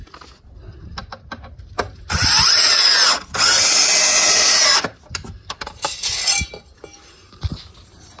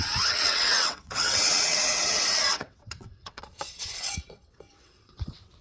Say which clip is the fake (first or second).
second